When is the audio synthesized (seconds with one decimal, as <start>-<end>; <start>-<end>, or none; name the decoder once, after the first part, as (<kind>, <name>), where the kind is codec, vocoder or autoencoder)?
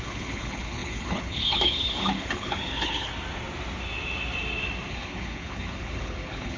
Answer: 0.0-3.1 (codec, HILCodec); 4.9-6.6